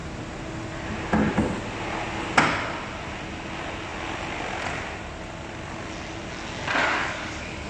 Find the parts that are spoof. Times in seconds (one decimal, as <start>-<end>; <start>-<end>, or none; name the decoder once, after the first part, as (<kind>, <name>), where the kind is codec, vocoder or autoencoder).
6.8-7.7 (codec, DAC)